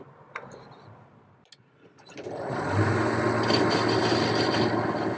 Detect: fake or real real